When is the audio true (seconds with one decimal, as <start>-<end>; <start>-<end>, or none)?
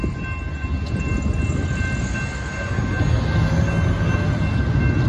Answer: 0.0-5.1